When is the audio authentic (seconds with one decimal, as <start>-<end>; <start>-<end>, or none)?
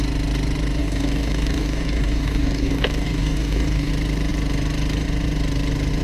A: 0.0-0.8; 3.9-6.0